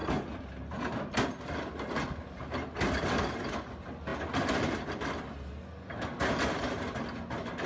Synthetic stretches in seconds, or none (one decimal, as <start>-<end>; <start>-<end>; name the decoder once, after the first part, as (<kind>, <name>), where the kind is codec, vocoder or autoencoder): none